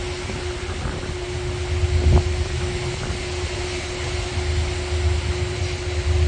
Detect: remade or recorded recorded